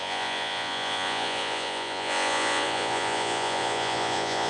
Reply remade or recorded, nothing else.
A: remade